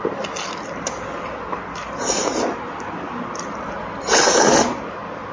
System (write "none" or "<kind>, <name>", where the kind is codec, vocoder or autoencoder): none